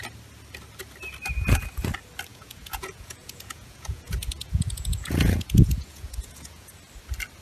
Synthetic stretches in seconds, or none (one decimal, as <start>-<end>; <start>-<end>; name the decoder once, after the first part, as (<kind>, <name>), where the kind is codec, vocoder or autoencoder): 2.3-6.7 (vocoder, Vocos)